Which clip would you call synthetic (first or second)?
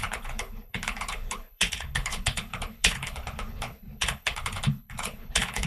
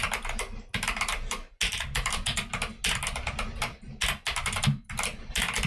first